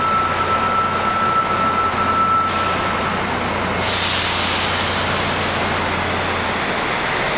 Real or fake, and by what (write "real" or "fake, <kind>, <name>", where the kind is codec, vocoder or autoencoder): real